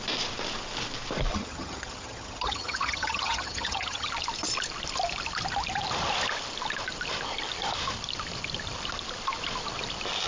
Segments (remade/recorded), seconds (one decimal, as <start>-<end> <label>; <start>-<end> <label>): 0.0-1.3 recorded; 1.3-4.1 remade; 4.1-10.3 recorded

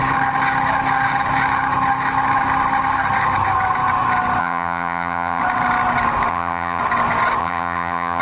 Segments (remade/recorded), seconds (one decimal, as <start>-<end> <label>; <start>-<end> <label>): 0.0-4.4 recorded; 4.4-5.4 remade; 5.4-6.3 recorded; 6.3-6.8 remade; 6.8-7.4 recorded; 7.4-8.2 remade